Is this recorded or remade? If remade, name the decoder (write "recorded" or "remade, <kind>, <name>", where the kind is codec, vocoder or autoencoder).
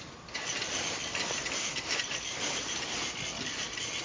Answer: recorded